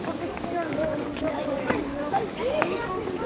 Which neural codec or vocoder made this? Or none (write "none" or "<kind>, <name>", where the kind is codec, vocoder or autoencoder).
codec, DAC